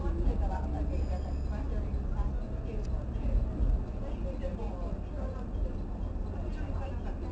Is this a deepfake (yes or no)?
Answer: no